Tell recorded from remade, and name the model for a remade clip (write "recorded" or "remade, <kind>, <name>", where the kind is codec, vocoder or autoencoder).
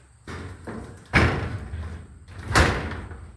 recorded